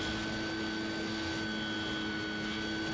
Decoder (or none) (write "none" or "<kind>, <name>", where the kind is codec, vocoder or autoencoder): none